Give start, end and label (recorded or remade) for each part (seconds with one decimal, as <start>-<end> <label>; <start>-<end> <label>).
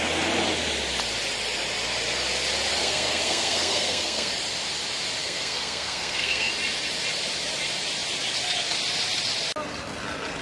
0.0-2.8 recorded; 2.8-4.3 remade; 4.3-5.2 recorded; 5.2-6.5 remade; 6.5-10.4 recorded